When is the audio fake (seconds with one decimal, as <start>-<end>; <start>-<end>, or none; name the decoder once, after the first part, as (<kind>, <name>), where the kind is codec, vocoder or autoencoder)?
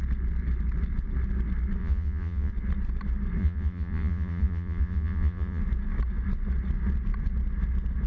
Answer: 1.8-2.5 (vocoder, Vocos); 3.4-5.6